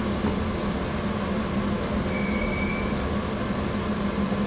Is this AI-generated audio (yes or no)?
no